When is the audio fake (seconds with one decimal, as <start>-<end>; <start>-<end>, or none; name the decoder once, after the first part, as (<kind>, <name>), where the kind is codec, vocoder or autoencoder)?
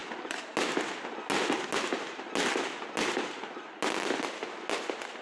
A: none